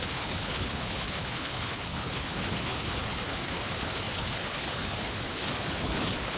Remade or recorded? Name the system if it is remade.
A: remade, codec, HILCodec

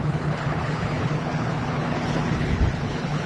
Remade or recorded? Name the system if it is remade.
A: remade, codec, HILCodec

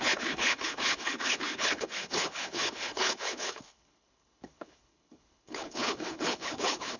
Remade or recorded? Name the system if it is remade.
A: remade, codec, HILCodec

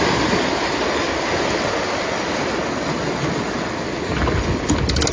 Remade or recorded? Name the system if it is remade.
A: recorded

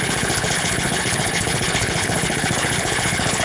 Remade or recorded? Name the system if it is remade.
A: remade, codec, HILCodec